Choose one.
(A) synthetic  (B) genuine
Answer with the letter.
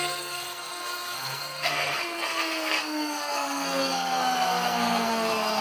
A